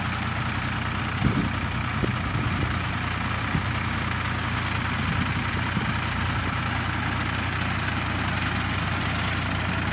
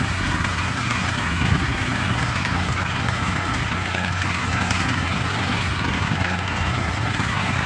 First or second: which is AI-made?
second